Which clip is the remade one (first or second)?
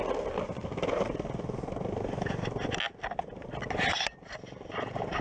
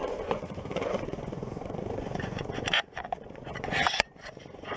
second